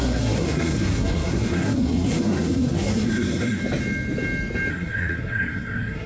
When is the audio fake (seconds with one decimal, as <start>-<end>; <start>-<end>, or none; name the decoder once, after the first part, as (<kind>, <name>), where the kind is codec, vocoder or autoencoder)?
0.0-3.6 (codec, SNAC); 4.7-6.1